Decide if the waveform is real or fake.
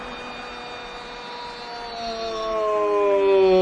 real